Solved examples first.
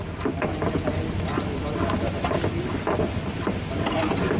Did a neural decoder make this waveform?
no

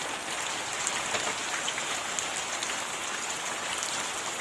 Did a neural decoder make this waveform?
no